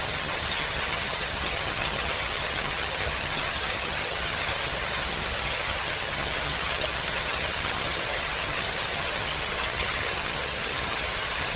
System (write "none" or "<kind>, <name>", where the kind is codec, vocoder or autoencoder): vocoder, HiFi-GAN